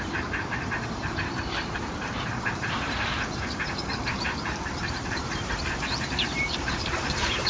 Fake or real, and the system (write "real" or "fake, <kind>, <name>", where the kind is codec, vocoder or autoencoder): fake, vocoder, BigVGAN v2